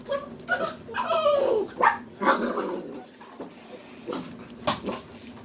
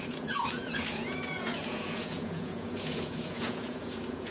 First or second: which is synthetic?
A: second